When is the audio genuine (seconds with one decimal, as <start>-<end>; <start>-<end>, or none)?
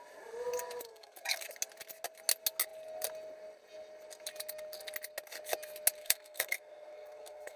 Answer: 0.0-0.9; 1.4-6.0